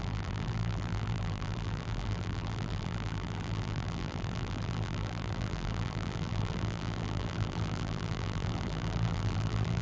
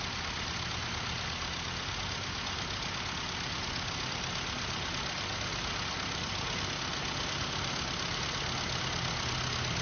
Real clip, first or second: second